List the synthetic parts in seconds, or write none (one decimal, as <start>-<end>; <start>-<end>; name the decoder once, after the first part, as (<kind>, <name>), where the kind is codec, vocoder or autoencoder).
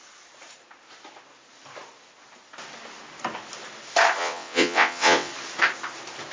4.2-5.3 (vocoder, WaveNeXt)